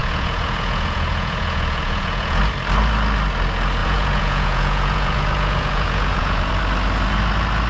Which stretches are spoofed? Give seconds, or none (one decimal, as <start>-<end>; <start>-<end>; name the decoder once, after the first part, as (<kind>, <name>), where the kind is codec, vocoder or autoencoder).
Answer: 0.0-2.4 (vocoder, Vocos); 3.8-6.5